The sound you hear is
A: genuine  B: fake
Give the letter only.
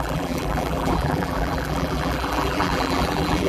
B